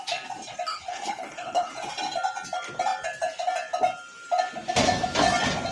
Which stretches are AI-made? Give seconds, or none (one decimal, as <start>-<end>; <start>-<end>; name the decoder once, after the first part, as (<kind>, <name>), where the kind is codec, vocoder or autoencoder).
0.7-1.7 (codec, HILCodec)